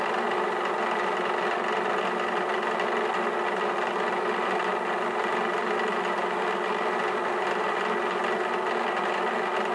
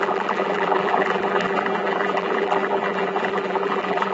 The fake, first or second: second